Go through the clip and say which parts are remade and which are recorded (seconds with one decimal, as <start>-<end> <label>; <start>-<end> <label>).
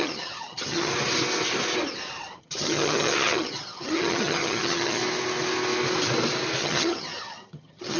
0.0-0.9 remade; 0.9-2.4 recorded; 2.4-5.0 remade; 5.0-6.6 recorded; 6.6-8.0 remade